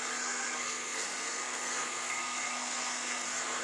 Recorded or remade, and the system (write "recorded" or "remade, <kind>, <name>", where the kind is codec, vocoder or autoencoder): remade, codec, SNAC